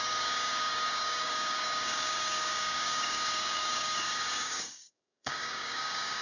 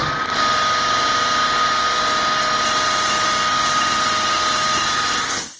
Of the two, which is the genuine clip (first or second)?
second